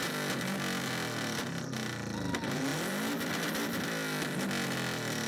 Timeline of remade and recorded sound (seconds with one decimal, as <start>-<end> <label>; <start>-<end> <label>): 0.0-5.3 recorded